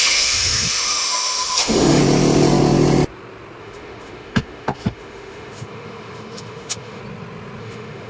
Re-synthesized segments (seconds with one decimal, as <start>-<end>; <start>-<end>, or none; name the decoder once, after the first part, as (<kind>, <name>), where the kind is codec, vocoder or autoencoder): 0.0-2.0 (autoencoder, DAC-VAE); 3.6-7.0; 7.6-8.1